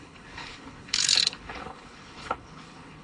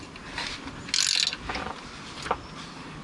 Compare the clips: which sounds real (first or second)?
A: second